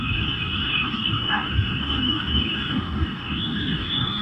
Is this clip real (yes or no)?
no